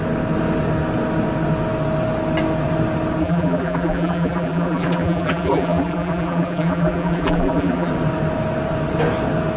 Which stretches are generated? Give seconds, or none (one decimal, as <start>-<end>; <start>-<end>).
3.2-7.9